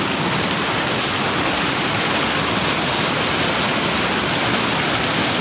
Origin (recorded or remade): recorded